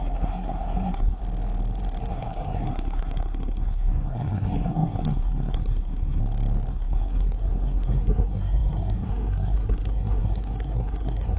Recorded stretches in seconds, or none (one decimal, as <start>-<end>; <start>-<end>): 1.2-2.1; 6.2-6.7

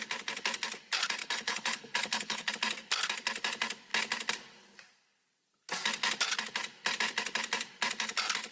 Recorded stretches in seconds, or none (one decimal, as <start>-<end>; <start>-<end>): 0.0-1.2; 2.5-8.5

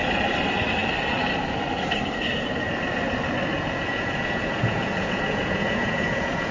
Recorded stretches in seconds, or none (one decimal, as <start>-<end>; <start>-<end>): 0.0-3.5

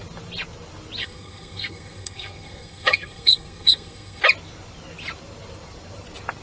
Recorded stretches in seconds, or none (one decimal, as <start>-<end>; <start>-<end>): 0.0-1.0; 4.2-6.4

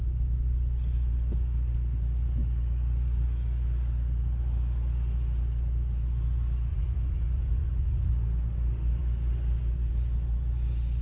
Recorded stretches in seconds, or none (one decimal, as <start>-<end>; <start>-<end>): 0.0-6.7; 8.1-11.0

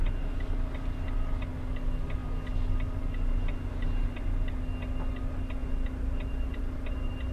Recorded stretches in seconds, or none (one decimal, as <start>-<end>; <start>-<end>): 0.0-7.3